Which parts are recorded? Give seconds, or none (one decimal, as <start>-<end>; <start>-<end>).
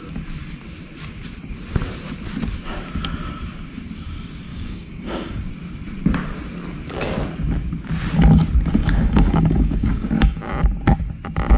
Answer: 0.0-4.5; 5.5-8.8; 10.5-11.6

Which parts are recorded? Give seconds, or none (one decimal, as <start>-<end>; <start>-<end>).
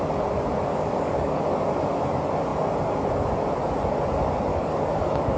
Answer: 0.0-0.7; 1.4-4.5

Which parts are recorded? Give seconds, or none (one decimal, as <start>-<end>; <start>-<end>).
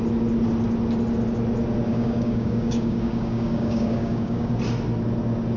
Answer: 0.0-1.9; 4.5-5.6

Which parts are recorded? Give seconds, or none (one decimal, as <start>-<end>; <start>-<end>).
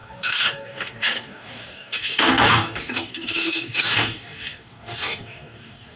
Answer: none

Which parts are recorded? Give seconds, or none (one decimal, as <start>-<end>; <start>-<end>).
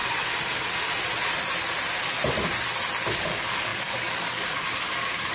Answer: 0.0-3.2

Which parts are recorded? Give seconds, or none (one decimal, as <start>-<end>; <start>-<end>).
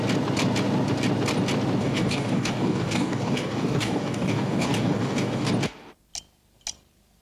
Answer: 0.0-1.8; 5.5-7.2